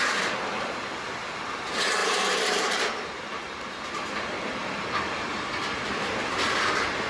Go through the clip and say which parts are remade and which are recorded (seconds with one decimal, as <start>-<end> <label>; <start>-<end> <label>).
0.0-2.0 recorded; 2.0-3.3 remade; 3.3-7.1 recorded